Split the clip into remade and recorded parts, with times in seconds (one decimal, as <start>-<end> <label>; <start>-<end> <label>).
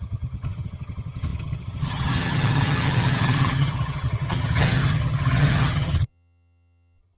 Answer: 0.0-7.2 remade